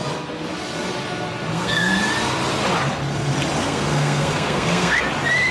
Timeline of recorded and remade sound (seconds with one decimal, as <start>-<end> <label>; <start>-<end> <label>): 0.0-1.5 recorded; 1.5-2.0 remade; 2.0-3.6 recorded; 3.6-5.0 remade; 5.0-5.5 recorded